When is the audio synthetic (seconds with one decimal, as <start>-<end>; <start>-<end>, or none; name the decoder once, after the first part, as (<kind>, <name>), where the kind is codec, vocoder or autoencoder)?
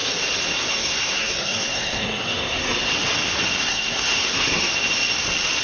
0.7-2.9 (codec, SNAC); 3.6-4.7